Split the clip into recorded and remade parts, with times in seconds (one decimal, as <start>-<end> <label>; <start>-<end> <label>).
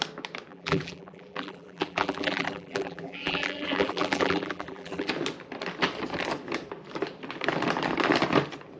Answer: 0.0-0.5 recorded; 0.5-5.1 remade; 5.1-8.8 recorded